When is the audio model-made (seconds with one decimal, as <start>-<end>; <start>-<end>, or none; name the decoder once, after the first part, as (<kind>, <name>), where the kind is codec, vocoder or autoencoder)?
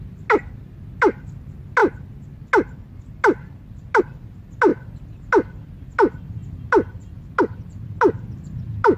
none